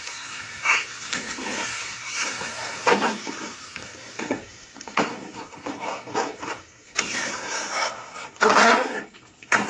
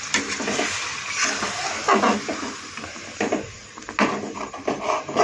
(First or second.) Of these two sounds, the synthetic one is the first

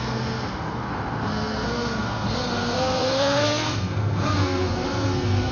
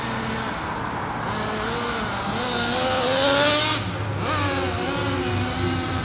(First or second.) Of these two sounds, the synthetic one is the first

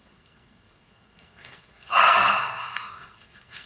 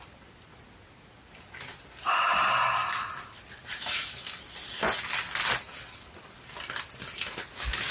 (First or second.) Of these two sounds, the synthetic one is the first